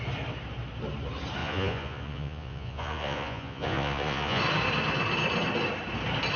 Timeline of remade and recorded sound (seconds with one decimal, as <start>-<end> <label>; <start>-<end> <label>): 0.0-1.4 recorded; 1.4-4.4 remade; 4.4-6.4 recorded